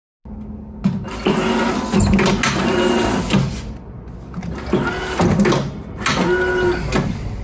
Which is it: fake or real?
real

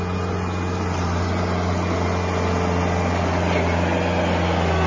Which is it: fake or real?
real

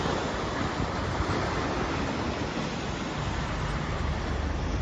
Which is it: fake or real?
real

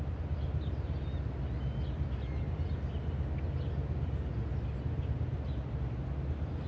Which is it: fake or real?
real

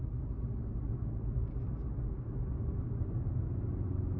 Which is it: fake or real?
real